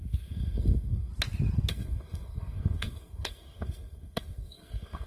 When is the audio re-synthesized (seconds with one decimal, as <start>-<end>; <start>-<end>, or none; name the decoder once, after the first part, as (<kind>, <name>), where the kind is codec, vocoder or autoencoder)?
0.0-1.1 (codec, SNAC); 1.7-5.1